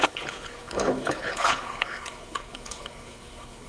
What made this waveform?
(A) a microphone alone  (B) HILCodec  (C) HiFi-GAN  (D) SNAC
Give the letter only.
B